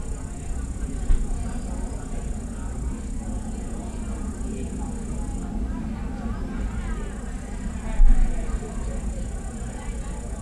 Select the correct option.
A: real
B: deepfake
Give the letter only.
A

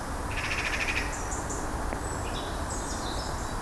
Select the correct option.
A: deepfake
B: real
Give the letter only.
B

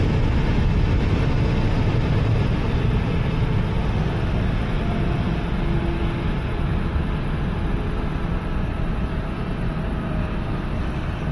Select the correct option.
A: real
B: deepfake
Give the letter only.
A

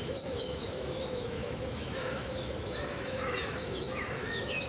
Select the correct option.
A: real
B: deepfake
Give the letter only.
B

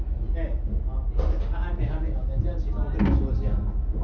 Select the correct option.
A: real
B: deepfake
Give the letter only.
A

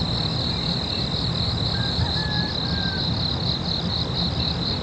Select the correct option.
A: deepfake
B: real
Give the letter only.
B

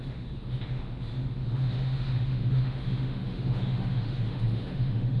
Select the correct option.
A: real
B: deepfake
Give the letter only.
B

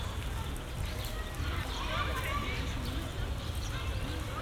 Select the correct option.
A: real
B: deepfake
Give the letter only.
A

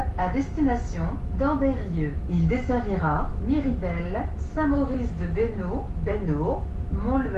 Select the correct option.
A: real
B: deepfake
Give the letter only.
B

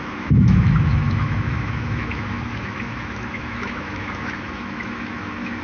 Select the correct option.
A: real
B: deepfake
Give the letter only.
B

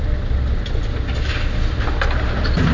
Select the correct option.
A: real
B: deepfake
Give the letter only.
A